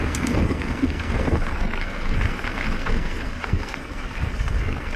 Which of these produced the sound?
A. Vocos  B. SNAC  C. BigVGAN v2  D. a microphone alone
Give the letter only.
B